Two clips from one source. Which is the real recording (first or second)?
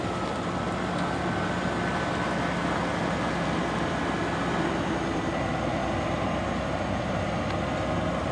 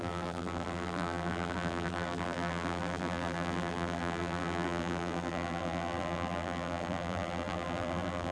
first